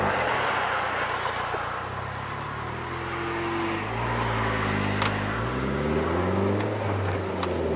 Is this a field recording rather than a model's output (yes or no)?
yes